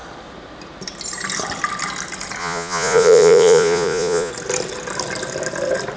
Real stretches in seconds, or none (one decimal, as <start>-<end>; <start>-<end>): 0.0-2.4; 4.3-6.0